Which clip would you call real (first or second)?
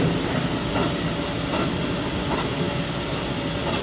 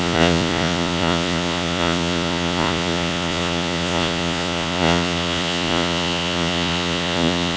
first